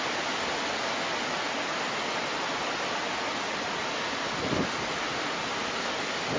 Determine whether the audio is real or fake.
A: real